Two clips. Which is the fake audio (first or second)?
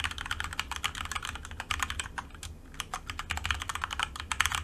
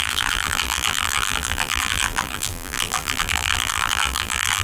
second